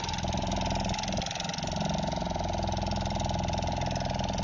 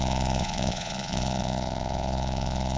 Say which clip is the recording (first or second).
first